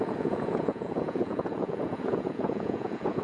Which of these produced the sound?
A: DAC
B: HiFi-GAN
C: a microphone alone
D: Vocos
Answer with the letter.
D